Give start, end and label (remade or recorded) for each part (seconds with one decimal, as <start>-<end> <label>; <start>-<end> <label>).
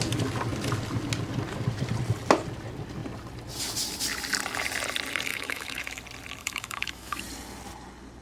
0.0-5.3 recorded; 5.3-6.0 remade; 6.0-6.4 recorded; 6.4-7.2 remade; 7.2-8.2 recorded